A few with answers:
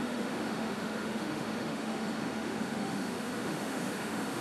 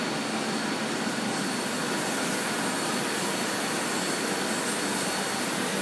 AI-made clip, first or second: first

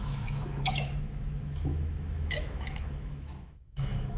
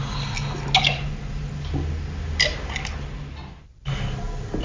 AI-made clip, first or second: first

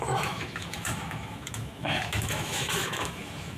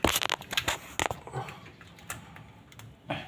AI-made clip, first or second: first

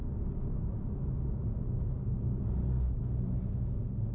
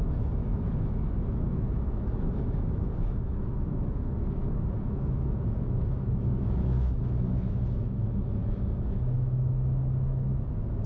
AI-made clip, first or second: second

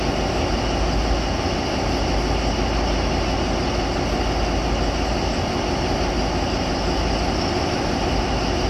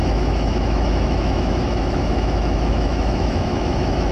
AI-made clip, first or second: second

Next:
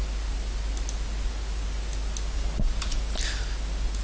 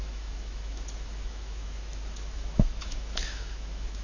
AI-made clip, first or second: second